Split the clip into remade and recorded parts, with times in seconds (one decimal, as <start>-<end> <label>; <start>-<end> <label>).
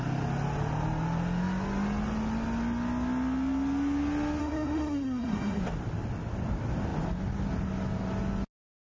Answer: 0.0-4.4 recorded; 4.4-5.6 remade; 5.6-8.9 recorded